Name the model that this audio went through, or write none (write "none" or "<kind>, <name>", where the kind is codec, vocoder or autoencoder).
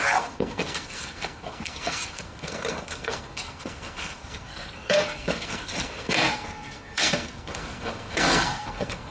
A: codec, SNAC